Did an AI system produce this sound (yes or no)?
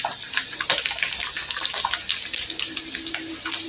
no